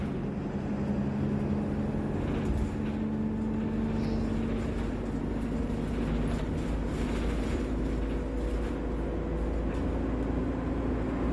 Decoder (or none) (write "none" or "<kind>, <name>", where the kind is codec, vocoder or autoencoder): none